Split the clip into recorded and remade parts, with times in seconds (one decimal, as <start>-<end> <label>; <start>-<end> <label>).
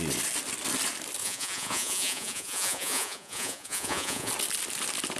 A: 0.0-1.2 recorded; 1.2-4.3 remade; 4.3-5.2 recorded